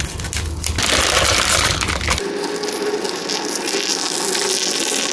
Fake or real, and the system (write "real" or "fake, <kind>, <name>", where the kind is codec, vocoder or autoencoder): real